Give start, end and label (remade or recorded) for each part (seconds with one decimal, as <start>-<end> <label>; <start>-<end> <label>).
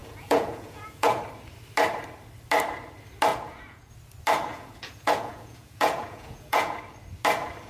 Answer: 0.0-1.2 remade; 1.2-3.3 recorded; 3.3-3.9 remade; 3.9-4.5 recorded; 4.5-6.8 remade; 6.8-7.7 recorded